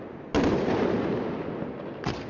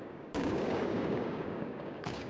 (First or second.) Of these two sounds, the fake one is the second